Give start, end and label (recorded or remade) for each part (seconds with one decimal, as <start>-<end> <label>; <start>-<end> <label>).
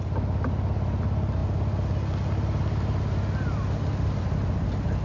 0.0-5.0 recorded